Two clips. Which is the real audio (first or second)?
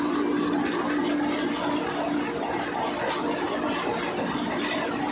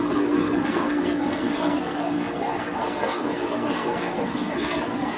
first